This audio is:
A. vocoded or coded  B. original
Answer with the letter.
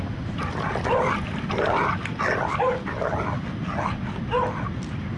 B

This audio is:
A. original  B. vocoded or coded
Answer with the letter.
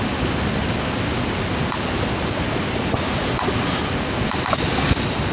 A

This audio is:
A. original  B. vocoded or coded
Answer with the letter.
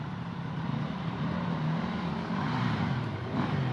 B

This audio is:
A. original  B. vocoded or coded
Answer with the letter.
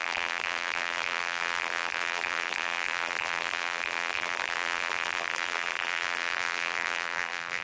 B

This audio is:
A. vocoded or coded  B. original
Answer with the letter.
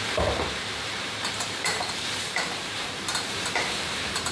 A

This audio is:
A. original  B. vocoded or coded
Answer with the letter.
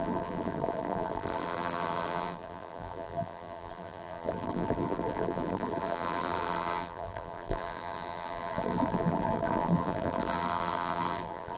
B